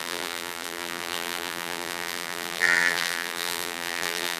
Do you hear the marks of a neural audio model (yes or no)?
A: yes